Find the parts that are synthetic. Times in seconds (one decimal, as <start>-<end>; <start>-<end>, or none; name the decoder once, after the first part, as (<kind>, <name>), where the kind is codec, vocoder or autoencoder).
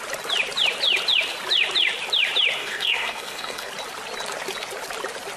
2.6-3.7 (codec, SNAC)